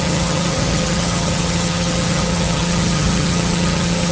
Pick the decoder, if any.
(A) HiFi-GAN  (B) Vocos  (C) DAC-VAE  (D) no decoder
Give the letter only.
A